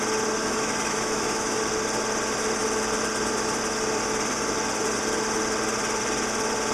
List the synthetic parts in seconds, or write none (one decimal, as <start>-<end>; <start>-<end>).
0.4-1.6